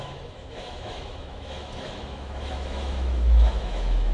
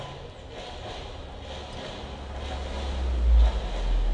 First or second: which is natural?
second